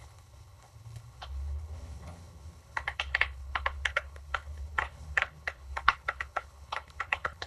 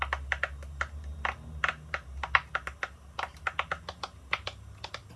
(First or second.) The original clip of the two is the second